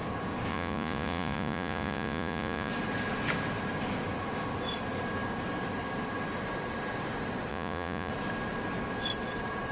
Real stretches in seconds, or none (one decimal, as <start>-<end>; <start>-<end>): 0.0-0.5; 2.7-7.5; 8.1-9.7